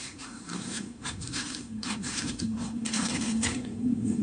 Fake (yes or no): yes